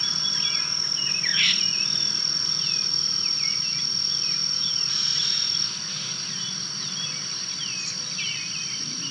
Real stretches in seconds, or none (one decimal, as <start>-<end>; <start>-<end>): 0.0-9.1